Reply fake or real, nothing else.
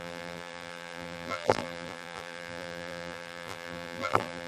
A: fake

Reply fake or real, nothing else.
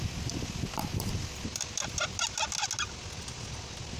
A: real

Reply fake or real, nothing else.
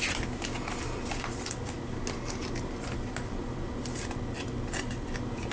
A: real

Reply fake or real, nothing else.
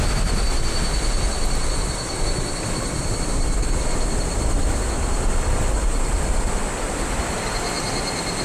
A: real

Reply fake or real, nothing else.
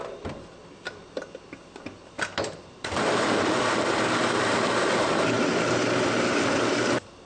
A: fake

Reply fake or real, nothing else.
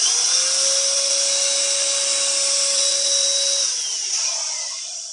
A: real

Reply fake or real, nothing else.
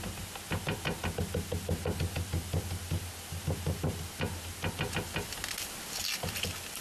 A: real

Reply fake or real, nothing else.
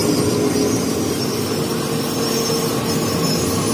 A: real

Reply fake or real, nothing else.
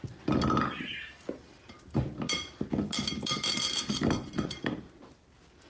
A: real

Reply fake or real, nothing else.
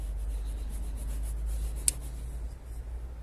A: real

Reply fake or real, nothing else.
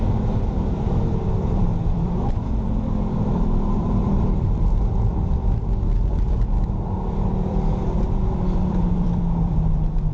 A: fake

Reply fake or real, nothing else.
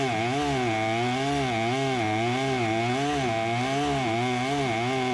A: real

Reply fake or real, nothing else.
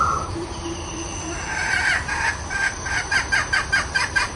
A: fake